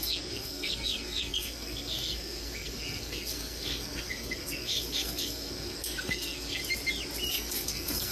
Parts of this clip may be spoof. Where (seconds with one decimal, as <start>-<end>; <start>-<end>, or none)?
0.0-6.6; 7.3-8.1